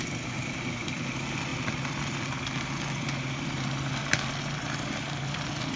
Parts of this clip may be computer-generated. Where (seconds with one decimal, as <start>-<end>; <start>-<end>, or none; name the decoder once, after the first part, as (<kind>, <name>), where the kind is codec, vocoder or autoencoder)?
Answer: none